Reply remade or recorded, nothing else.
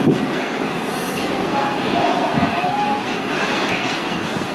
remade